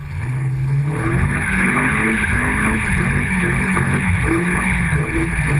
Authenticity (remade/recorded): remade